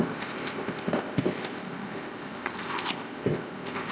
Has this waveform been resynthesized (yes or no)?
yes